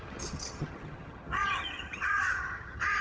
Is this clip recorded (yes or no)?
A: no